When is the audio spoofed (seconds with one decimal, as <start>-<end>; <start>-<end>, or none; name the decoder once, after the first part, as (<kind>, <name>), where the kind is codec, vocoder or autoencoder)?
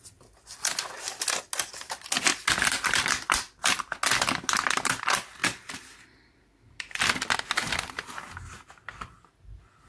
2.3-3.1 (vocoder, BigVGAN v2); 5.4-7.1